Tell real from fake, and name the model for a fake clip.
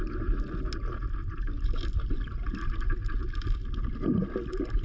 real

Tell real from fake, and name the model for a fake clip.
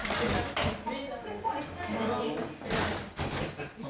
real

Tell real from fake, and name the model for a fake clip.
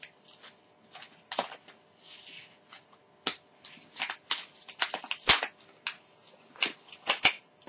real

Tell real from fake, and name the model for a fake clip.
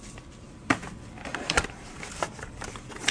fake, vocoder, BigVGAN v2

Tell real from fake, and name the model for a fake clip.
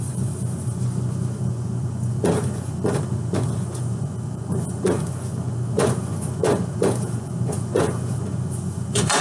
fake, vocoder, Vocos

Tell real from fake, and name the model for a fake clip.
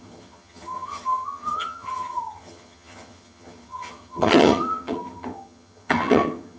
fake, vocoder, HiFi-GAN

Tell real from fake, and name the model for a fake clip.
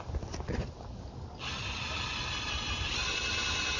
real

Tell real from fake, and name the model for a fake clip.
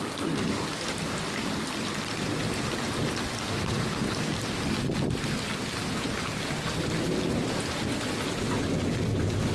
real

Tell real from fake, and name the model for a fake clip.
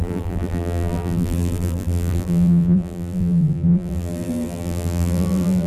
fake, vocoder, BigVGAN v2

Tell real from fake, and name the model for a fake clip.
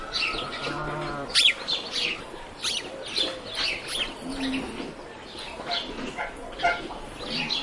real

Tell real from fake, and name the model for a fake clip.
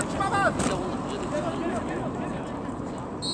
real